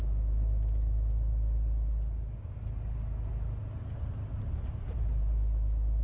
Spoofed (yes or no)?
no